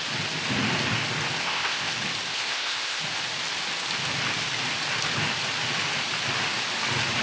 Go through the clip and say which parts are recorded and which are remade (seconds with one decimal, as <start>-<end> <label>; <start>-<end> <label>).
0.0-1.4 recorded; 1.4-1.9 remade; 1.9-2.3 recorded; 2.3-3.0 remade; 3.0-7.2 recorded